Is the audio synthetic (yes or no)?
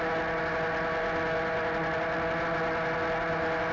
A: no